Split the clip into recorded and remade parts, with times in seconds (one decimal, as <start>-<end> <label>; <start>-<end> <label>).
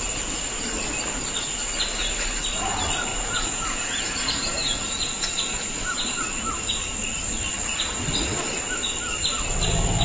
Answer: 0.0-3.1 recorded; 3.1-6.2 remade; 6.2-10.0 recorded